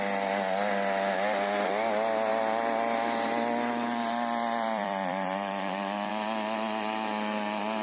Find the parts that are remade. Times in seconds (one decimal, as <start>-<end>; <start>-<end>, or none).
2.3-6.1